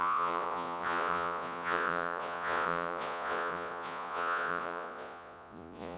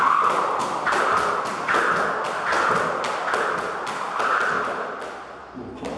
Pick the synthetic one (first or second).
first